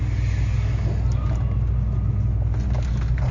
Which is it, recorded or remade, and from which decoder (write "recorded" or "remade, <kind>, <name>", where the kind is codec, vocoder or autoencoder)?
recorded